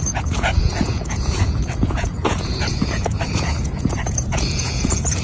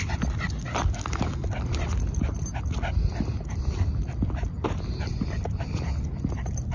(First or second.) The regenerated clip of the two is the first